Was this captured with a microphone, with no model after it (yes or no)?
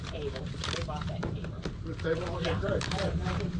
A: no